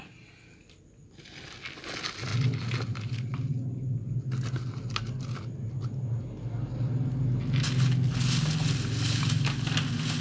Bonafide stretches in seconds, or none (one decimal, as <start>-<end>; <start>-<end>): 0.0-10.2